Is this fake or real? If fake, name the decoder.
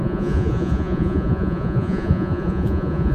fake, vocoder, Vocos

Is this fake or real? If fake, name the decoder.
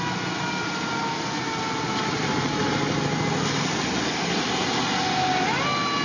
real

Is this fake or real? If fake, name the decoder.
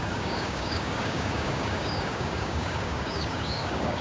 fake, codec, DAC